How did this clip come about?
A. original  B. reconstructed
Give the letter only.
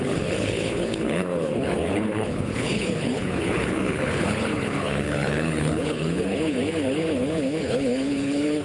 B